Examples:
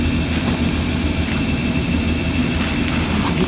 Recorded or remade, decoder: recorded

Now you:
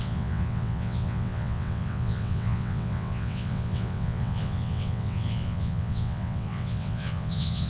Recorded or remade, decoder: remade, vocoder, WaveNeXt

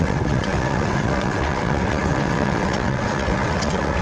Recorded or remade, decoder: remade, vocoder, WaveNeXt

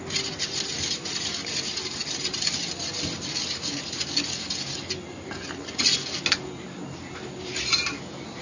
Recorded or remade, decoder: recorded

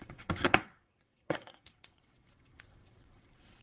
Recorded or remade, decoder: remade, vocoder, WaveNeXt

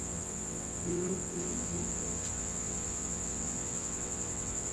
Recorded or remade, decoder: remade, vocoder, WaveNeXt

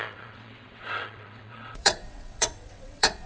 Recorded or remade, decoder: remade, vocoder, WaveNeXt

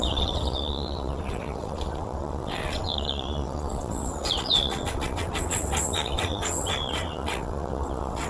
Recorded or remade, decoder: remade, vocoder, WaveNeXt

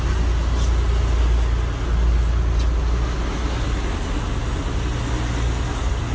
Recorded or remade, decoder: recorded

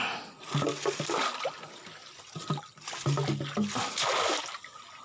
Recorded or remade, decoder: recorded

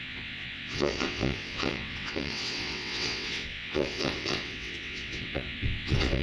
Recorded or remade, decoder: remade, vocoder, WaveNeXt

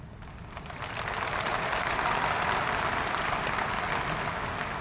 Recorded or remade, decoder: recorded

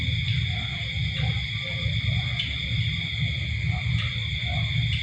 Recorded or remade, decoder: recorded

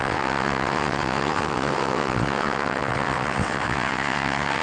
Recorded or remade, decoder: remade, vocoder, WaveNeXt